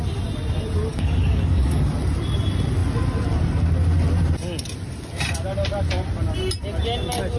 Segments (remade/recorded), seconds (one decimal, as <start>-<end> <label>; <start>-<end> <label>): 0.0-0.9 recorded; 0.9-1.9 remade; 1.9-7.4 recorded